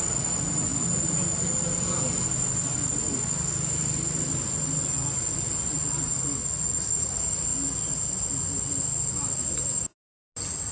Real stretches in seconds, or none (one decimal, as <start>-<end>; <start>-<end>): 0.0-6.4; 7.1-10.7